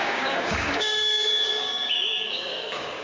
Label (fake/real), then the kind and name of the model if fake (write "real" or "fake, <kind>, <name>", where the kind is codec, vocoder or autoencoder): fake, codec, DAC